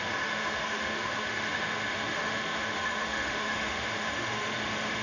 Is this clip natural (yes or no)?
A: no